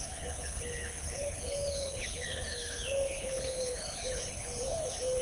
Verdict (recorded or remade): remade